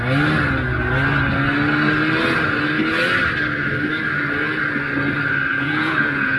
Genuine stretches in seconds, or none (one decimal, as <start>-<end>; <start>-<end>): 0.0-5.5